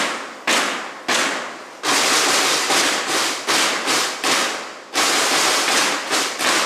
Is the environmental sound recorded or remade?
recorded